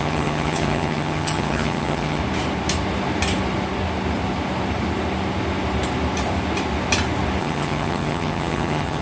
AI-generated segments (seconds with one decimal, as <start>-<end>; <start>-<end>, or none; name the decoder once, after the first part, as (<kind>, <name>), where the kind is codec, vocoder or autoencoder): 0.0-2.2 (vocoder, HiFi-GAN); 7.4-9.0